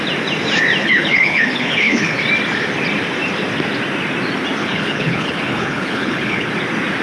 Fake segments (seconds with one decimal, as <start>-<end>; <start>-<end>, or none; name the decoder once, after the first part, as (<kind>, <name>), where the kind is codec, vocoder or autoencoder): 0.8-2.2 (codec, HILCodec); 4.6-6.5